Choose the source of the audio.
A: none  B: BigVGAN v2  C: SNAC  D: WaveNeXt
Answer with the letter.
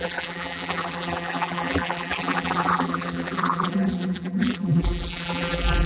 B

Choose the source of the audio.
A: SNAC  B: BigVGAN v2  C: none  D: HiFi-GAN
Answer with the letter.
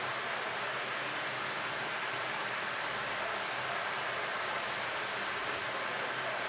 C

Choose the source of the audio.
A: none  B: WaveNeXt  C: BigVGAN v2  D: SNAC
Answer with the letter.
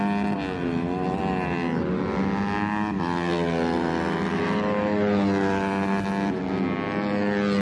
A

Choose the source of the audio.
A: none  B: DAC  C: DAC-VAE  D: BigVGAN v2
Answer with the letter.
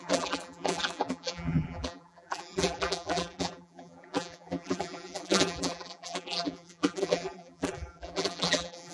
D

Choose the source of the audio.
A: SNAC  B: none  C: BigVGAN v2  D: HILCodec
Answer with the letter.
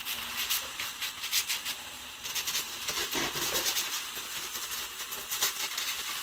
C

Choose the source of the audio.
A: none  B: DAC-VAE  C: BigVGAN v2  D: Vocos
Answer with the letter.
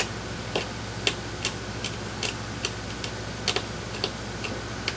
A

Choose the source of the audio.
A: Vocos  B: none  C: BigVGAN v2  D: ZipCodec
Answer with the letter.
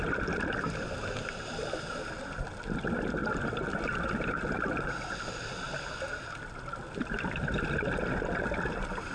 B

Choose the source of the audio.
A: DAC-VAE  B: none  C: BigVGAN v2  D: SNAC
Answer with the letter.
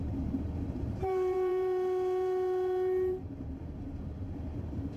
C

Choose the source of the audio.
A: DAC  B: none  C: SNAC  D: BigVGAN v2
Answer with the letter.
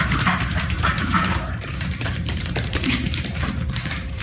D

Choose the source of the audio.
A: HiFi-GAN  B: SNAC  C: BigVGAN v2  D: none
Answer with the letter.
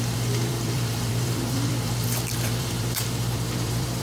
C